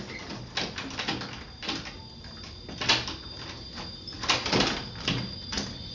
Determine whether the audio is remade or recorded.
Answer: recorded